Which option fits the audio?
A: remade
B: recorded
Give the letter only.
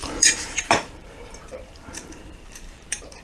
A